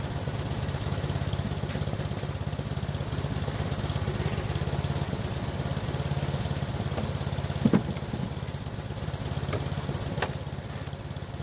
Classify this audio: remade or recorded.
recorded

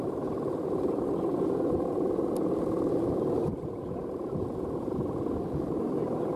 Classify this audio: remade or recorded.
recorded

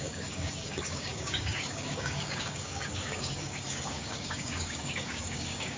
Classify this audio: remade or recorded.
remade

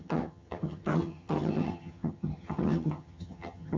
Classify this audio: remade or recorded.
remade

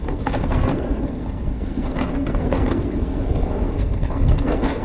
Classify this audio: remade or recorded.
remade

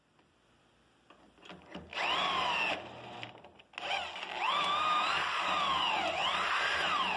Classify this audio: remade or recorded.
recorded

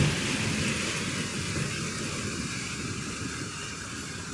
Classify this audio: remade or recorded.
recorded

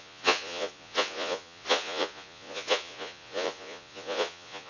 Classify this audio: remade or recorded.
remade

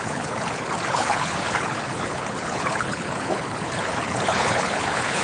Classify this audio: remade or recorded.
remade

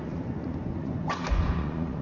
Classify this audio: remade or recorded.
remade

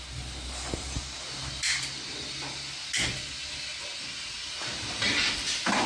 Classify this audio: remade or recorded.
recorded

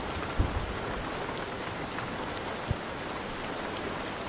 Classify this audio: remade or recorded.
recorded